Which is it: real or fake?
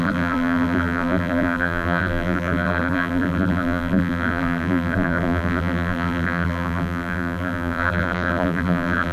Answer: fake